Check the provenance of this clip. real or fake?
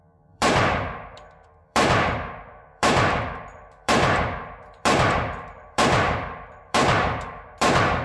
fake